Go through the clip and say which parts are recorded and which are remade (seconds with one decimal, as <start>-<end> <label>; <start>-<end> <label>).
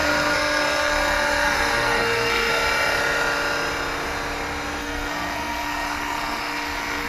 0.0-2.5 remade; 2.5-4.8 recorded; 4.8-7.1 remade